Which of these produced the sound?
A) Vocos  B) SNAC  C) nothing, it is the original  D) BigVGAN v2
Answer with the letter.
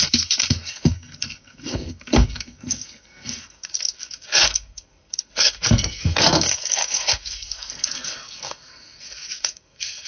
B